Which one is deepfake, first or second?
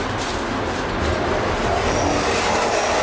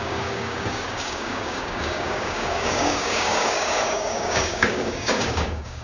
second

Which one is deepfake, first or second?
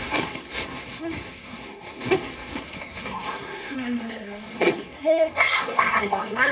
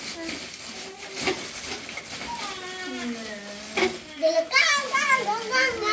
first